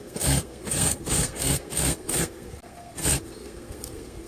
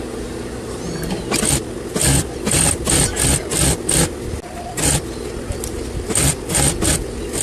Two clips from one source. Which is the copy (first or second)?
first